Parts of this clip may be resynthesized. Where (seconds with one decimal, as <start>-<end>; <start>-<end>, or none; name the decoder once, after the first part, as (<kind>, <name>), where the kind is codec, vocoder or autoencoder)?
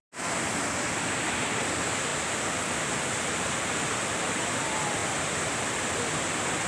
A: none